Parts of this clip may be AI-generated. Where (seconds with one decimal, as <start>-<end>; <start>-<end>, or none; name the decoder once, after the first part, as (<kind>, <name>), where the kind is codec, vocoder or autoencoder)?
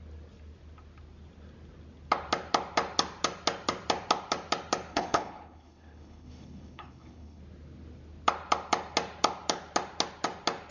4.9-7.4 (codec, HILCodec)